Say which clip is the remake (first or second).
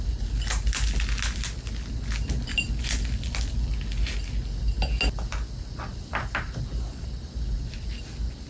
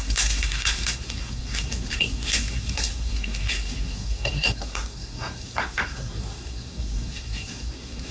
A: second